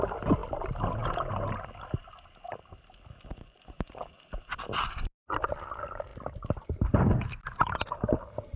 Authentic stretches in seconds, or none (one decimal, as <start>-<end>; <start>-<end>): 0.0-3.3; 3.9-8.6